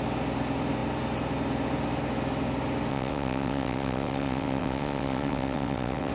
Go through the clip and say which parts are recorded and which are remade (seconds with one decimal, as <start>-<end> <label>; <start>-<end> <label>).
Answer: 0.0-2.9 recorded; 2.9-6.1 remade